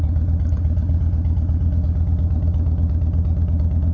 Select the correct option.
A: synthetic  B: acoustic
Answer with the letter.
B